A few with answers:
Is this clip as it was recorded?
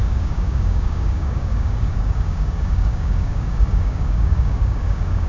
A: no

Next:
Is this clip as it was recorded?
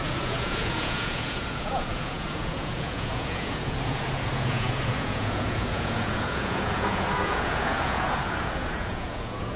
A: no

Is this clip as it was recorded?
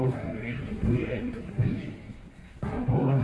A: no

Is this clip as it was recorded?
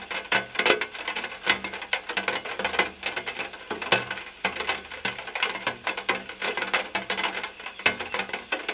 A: yes